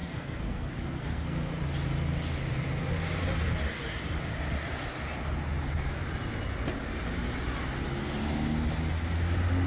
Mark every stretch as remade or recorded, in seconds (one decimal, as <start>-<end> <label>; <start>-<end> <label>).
0.0-1.5 remade; 1.5-9.7 recorded